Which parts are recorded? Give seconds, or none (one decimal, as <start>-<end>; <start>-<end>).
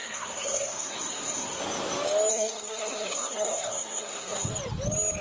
1.6-2.3; 4.5-5.2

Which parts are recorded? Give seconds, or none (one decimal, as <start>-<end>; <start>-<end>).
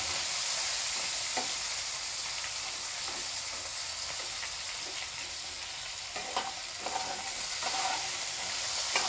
7.6-8.2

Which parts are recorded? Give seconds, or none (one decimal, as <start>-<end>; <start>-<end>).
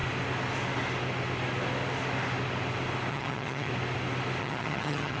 0.0-3.1; 3.7-4.4